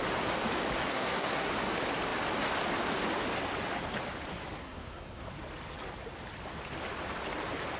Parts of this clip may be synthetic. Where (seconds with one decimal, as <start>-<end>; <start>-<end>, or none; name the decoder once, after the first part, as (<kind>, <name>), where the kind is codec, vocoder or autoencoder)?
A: 0.9-1.5 (codec, SNAC); 4.6-5.3